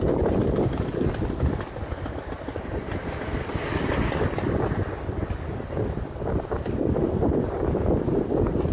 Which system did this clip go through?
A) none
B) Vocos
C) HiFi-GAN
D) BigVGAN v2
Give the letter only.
A